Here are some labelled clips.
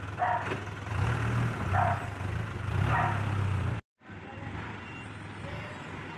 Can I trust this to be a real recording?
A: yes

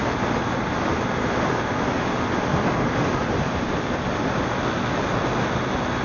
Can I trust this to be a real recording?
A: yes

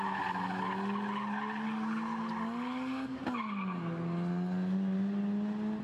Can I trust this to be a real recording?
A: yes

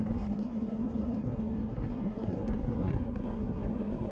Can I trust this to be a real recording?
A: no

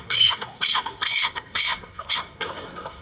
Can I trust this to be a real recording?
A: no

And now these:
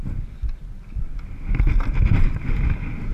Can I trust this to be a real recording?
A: yes